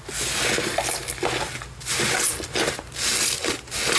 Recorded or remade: recorded